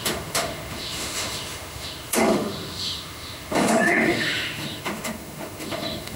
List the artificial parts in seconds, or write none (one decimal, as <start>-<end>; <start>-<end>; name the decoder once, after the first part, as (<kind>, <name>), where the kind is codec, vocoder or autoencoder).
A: 0.0-6.2 (autoencoder, DAC-VAE)